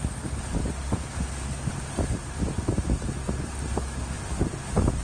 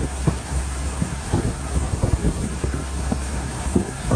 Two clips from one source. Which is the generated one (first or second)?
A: second